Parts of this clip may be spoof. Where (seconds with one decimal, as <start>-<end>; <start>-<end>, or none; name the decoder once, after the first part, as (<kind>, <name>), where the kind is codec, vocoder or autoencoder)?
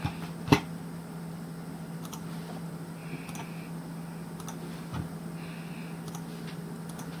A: none